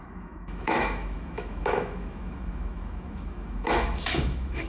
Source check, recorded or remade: remade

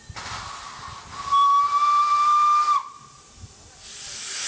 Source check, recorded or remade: recorded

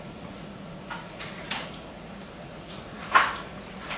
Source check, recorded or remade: remade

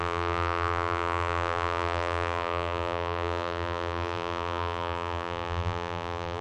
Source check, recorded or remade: remade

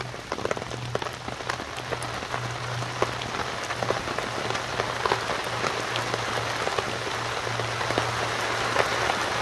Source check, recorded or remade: recorded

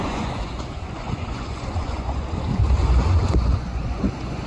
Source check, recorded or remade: remade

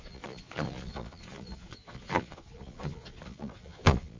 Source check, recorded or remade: remade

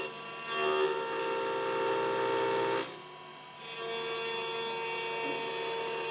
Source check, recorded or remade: recorded